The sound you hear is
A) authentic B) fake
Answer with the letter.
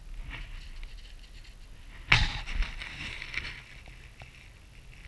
A